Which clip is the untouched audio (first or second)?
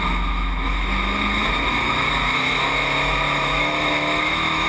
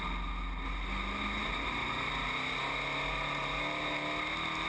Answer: second